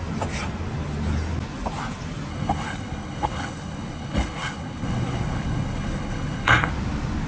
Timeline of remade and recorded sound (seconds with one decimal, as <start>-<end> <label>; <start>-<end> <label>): 0.0-2.3 recorded; 2.3-6.7 remade; 6.7-7.3 recorded